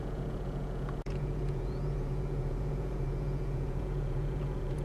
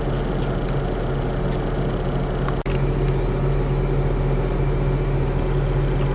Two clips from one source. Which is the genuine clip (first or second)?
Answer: second